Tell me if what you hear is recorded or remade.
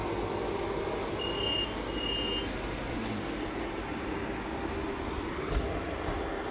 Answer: recorded